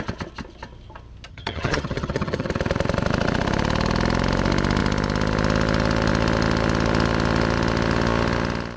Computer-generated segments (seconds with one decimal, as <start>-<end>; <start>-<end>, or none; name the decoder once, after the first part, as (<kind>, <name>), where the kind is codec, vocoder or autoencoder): 1.3-2.5 (vocoder, HiFi-GAN)